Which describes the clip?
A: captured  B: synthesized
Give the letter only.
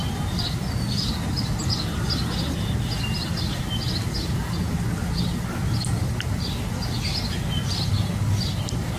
A